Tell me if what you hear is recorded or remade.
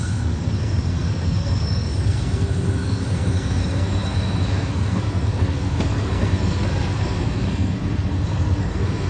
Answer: remade